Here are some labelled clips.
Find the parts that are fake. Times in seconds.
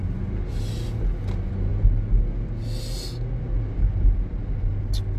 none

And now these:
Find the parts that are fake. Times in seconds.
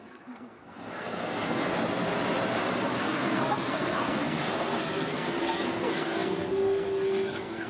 0.0-1.7 (codec, SNAC); 3.0-7.7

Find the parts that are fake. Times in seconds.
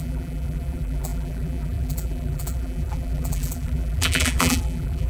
0.0-5.1 (vocoder, BigVGAN v2)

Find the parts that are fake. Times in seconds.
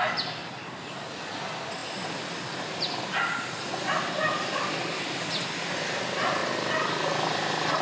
none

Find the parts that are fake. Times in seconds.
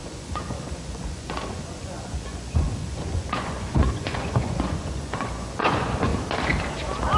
0.0-6.1 (vocoder, Vocos)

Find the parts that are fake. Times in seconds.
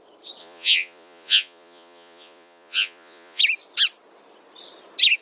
0.4-3.4 (vocoder, Vocos)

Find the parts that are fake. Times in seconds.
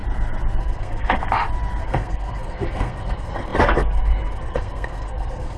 0.6-1.2 (codec, SNAC); 1.8-5.6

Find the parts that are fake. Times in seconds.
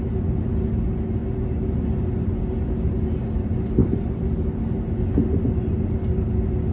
none